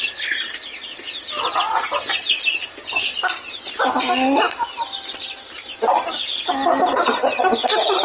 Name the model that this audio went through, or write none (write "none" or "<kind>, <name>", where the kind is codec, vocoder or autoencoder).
none